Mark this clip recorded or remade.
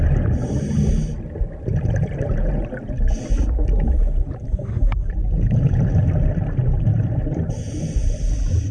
recorded